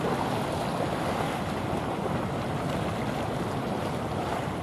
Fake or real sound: real